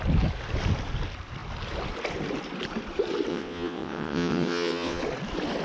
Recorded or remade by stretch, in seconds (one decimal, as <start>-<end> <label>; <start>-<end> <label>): 0.0-3.3 recorded; 3.3-5.0 remade; 5.0-5.6 recorded

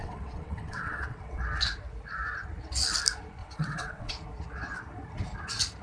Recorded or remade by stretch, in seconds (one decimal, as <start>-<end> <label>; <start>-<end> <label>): 0.0-1.4 remade; 1.4-3.4 recorded; 3.4-4.1 remade; 4.1-5.8 recorded

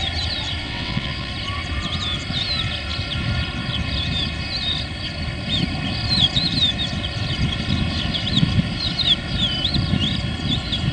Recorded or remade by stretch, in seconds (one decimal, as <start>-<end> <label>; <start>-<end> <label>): 0.0-0.6 recorded; 0.6-1.3 remade; 1.3-10.9 recorded

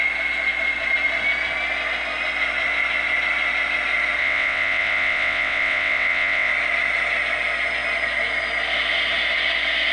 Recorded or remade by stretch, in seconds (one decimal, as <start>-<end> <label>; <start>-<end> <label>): 0.0-4.2 recorded; 4.2-6.5 remade; 6.5-9.9 recorded